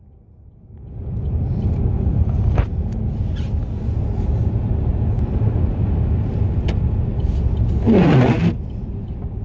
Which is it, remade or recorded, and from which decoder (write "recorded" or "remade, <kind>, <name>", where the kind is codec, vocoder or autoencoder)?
recorded